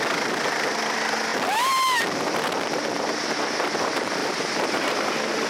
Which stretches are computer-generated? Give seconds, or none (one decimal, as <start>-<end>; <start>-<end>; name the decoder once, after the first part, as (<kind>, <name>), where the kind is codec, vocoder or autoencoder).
4.2-5.0 (vocoder, BigVGAN v2)